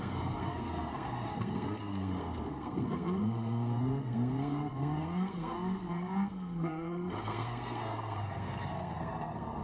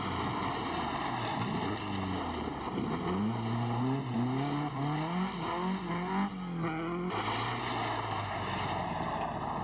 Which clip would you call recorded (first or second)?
second